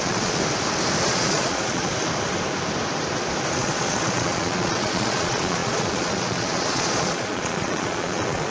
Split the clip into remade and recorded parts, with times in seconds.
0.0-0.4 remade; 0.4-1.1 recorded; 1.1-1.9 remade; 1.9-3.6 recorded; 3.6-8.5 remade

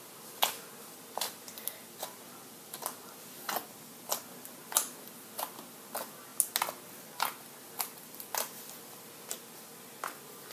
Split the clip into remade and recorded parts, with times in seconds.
0.0-10.5 recorded

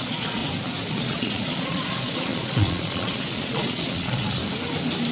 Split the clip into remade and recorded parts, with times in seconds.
0.0-0.4 remade; 0.4-0.9 recorded; 0.9-4.4 remade; 4.4-5.1 recorded

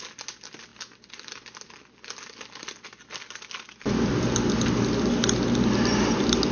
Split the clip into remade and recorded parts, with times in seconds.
0.0-6.5 recorded